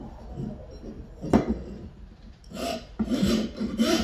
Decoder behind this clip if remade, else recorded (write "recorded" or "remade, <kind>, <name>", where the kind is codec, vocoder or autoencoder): recorded